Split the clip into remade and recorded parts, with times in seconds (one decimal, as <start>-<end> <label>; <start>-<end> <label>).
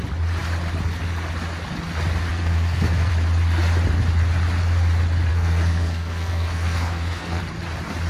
0.0-2.3 recorded; 2.3-3.1 remade; 3.1-5.3 recorded; 5.3-7.4 remade; 7.4-8.1 recorded